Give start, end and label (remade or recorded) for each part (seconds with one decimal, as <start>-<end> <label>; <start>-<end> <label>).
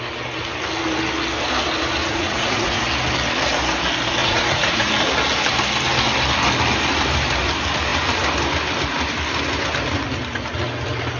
0.0-2.0 recorded; 2.0-2.8 remade; 2.8-4.2 recorded; 4.2-4.9 remade; 4.9-11.2 recorded